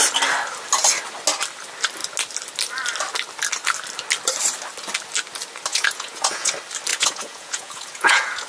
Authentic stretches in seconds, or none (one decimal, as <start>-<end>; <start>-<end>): 0.0-5.7; 6.5-6.9